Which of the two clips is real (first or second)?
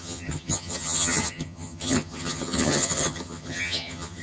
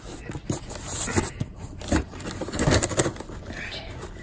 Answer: second